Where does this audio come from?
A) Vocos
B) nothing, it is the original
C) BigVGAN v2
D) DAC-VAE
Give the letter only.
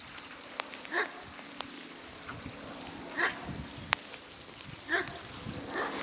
B